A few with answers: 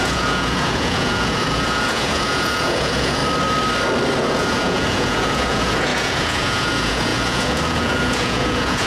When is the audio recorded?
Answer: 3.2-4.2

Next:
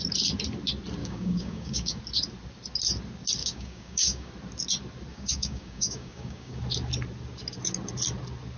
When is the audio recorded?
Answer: 0.0-1.0; 2.0-3.4; 4.3-5.1; 6.6-8.6

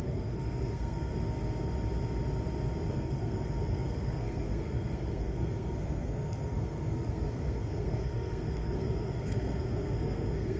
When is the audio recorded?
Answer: 1.1-2.9

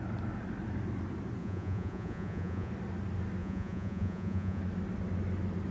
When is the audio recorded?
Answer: 0.0-1.4; 2.7-3.4; 4.6-5.7

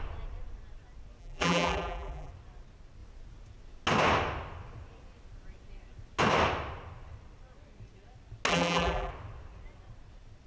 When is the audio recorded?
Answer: 0.0-1.2; 2.3-8.5; 9.1-10.5

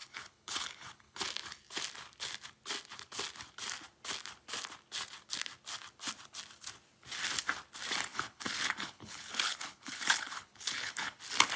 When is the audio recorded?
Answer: 1.2-8.1; 11.2-11.6

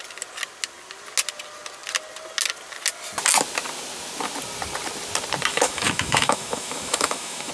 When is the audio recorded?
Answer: 0.0-5.5